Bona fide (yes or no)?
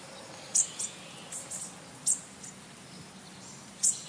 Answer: yes